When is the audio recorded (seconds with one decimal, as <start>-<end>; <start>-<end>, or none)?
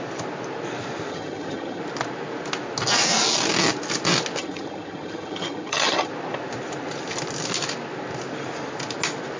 0.0-1.1; 1.8-4.4; 6.1-9.4